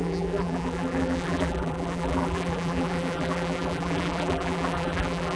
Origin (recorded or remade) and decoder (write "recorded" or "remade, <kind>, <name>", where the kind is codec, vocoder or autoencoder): remade, vocoder, BigVGAN v2